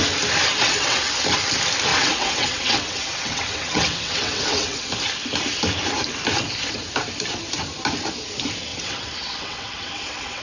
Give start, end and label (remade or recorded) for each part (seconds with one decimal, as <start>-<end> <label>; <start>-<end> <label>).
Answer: 0.0-0.5 recorded; 0.5-1.1 remade; 1.1-1.9 recorded; 1.9-4.9 remade; 4.9-8.7 recorded; 8.7-10.4 remade